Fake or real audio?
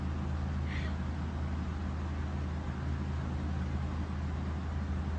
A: real